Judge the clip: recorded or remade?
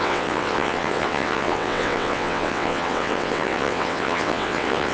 remade